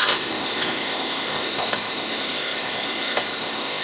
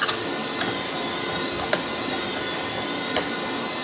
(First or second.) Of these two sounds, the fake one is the first